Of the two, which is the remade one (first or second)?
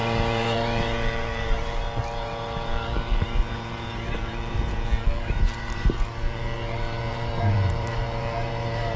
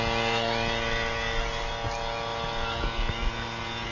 first